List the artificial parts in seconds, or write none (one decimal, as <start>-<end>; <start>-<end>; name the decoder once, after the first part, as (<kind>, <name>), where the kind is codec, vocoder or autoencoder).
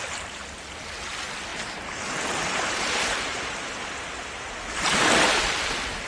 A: 1.5-3.5 (vocoder, BigVGAN v2)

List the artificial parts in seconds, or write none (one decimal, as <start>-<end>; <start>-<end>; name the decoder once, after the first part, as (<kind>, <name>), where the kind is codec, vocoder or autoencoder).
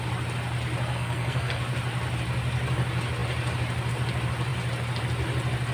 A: 0.9-1.6 (codec, SNAC)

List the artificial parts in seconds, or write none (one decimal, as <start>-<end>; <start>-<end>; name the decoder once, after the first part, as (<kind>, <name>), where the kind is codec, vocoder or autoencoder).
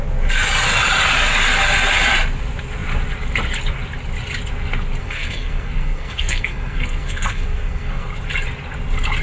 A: 5.0-8.1 (codec, SNAC)